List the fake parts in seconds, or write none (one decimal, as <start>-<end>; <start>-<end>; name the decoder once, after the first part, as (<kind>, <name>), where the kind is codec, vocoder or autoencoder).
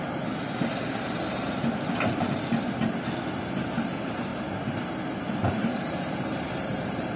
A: 4.3-4.8 (vocoder, BigVGAN v2); 5.4-7.2